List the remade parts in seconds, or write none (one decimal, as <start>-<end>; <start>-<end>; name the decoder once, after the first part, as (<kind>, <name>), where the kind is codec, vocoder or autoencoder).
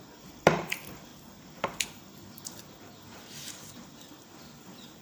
0.0-5.0 (vocoder, BigVGAN v2)